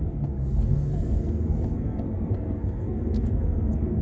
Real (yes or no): no